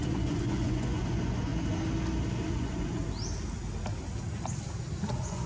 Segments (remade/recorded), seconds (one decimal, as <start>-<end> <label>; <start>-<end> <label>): 0.0-1.5 remade; 1.5-2.5 recorded; 2.5-3.0 remade; 3.0-5.1 recorded; 5.1-5.5 remade